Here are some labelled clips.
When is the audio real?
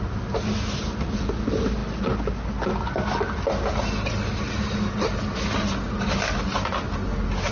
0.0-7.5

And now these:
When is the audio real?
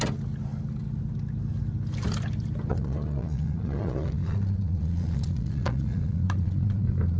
0.0-2.7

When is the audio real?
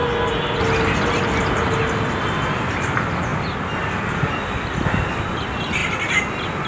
0.0-6.7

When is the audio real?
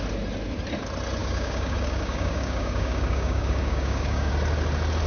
0.0-1.2; 4.3-5.1